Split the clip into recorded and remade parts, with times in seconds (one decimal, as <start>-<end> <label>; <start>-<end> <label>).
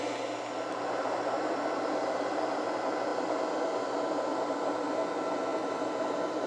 0.0-6.5 recorded